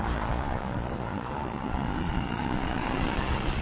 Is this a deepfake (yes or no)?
yes